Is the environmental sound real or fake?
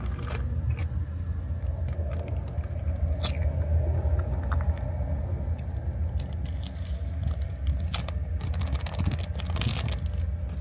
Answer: real